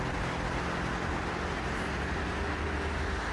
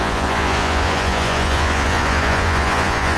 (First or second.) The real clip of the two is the first